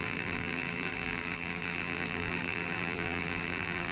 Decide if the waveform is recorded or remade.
remade